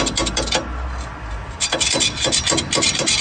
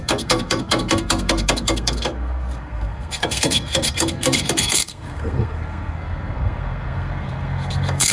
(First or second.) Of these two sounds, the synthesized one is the second